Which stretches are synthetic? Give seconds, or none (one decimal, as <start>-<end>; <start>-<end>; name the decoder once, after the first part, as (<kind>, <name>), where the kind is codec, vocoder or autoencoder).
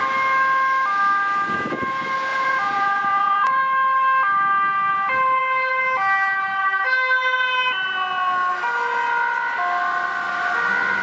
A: 2.3-3.6 (vocoder, Vocos)